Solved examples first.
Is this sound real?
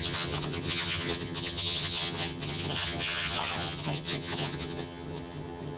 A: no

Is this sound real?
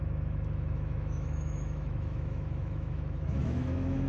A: no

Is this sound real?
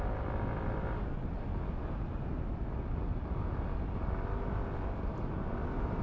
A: yes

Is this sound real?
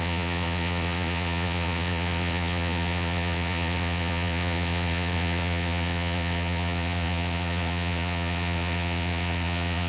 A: no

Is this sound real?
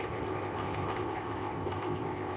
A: no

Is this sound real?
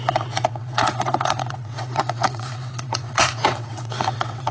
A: no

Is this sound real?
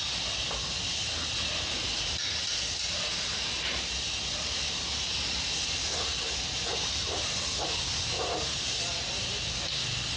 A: yes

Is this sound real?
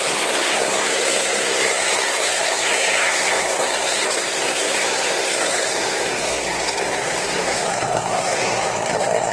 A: no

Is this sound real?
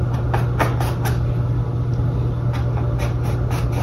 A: yes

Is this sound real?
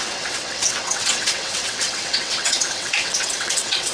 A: no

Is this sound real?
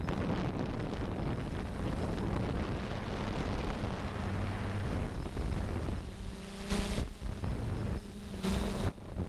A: yes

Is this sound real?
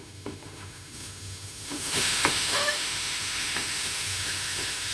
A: no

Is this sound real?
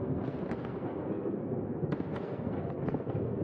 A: no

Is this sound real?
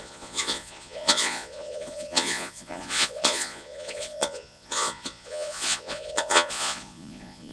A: no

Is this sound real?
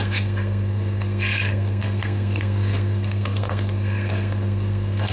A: no